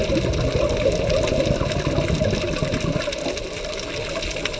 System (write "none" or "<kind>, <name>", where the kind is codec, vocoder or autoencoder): none